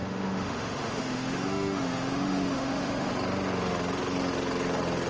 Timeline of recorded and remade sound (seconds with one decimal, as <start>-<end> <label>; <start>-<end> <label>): 0.0-3.1 remade; 3.1-5.1 recorded